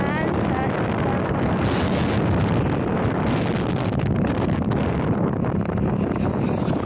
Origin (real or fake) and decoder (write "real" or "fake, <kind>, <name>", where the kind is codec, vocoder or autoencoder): real